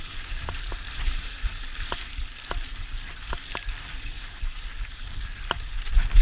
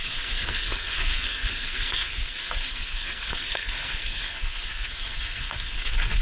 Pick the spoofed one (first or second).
second